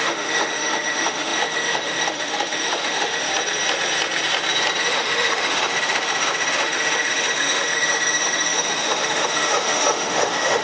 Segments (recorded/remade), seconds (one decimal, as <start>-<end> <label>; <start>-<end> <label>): 0.0-3.3 remade; 3.3-4.8 recorded; 4.8-10.6 remade